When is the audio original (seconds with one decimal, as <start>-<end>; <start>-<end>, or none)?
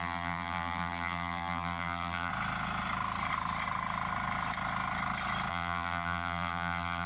2.3-5.5